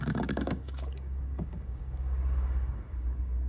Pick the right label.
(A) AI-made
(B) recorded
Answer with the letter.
A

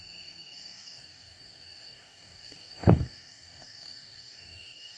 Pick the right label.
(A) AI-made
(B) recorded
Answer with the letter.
A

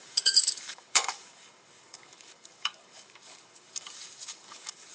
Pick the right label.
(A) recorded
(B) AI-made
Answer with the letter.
B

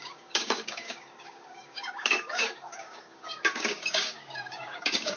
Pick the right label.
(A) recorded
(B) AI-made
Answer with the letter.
B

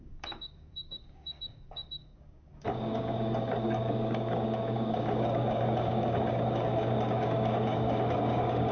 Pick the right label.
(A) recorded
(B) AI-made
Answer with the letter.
B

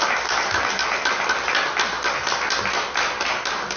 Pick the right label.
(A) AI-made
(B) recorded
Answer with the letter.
B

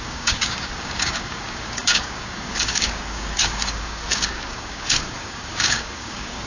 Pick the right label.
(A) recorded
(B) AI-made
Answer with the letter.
B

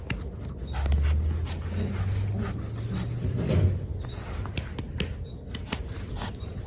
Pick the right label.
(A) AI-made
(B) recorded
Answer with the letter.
B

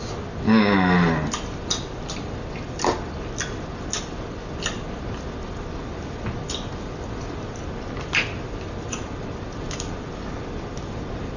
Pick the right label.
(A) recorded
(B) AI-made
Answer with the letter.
A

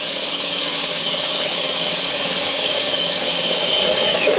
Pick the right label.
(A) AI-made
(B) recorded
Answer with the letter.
A